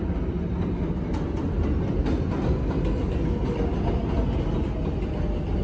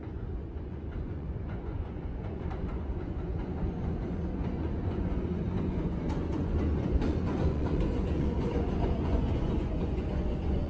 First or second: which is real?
first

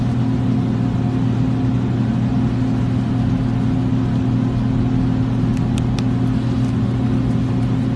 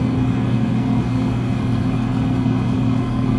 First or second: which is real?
first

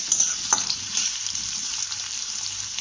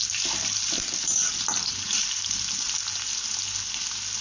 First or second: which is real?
second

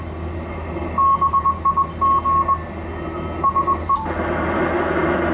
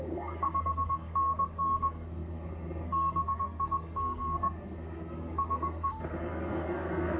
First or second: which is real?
first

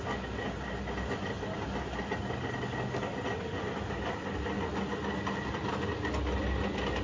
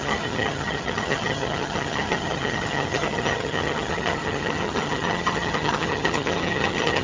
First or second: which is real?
first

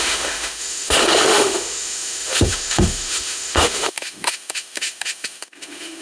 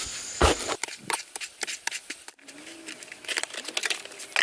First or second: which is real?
second